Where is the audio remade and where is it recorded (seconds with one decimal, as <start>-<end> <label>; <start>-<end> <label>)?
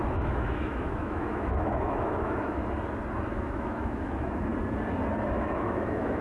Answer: 0.0-2.6 remade; 2.6-3.3 recorded; 3.3-4.5 remade; 4.5-5.3 recorded; 5.3-6.2 remade